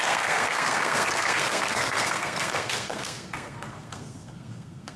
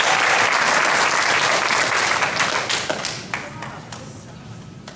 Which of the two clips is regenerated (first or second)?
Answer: first